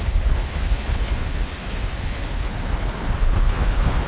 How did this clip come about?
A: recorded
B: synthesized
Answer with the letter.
B